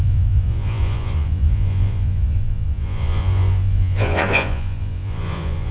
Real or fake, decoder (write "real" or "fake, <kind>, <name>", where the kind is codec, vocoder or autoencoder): fake, vocoder, Vocos